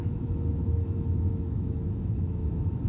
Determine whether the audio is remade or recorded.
remade